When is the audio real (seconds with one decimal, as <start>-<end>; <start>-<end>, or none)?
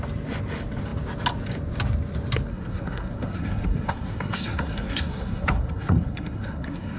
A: 0.0-2.5